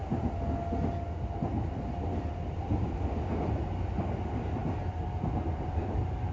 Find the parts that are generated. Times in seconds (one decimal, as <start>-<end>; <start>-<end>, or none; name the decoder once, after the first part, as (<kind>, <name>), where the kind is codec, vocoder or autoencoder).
none